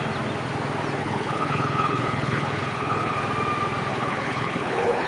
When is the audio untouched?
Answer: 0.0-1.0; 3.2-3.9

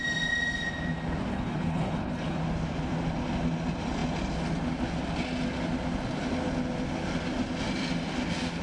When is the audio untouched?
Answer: 0.0-1.3; 2.4-8.6

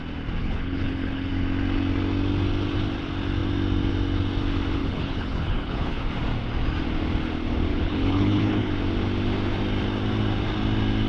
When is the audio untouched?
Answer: 0.0-0.4; 1.3-4.8; 6.0-7.7; 8.7-11.1

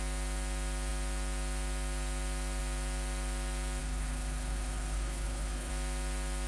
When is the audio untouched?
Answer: 0.0-3.8; 5.7-6.5

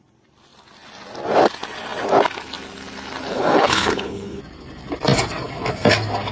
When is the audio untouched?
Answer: 0.0-3.3; 4.4-6.3

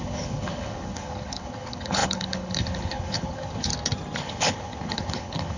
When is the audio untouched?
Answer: 3.7-4.2

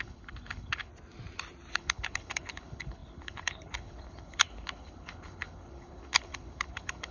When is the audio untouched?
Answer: 0.9-1.7

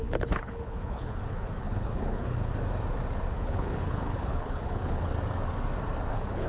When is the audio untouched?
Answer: 2.5-3.3; 5.1-6.1